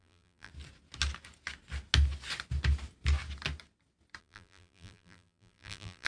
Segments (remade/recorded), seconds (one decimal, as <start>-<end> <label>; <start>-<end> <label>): 0.0-0.5 remade; 0.5-4.2 recorded; 4.2-6.1 remade